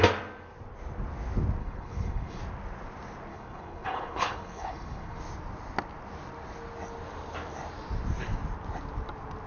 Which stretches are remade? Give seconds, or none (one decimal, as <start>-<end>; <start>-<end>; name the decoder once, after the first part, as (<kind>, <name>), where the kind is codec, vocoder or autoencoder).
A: 1.6-2.4 (codec, HILCodec); 3.3-5.2